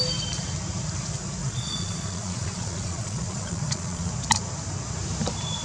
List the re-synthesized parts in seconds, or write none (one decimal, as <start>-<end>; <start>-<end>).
1.4-4.1